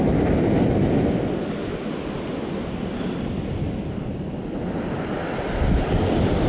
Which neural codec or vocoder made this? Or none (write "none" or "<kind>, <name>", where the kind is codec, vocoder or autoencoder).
none